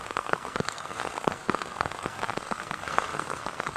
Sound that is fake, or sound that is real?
fake